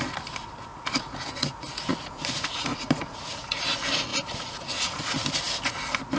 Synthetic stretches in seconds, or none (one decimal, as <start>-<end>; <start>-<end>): 0.7-3.6; 4.1-5.0